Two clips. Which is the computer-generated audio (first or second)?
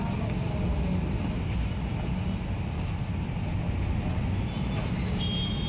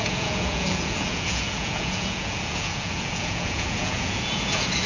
second